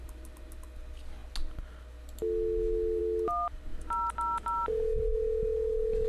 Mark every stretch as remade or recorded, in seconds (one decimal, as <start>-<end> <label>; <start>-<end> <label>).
0.0-6.1 recorded